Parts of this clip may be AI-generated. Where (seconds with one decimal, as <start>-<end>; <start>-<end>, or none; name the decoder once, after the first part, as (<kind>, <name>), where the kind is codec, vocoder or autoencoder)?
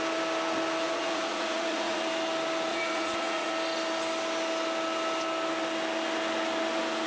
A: 0.8-2.0 (vocoder, Vocos); 2.7-3.5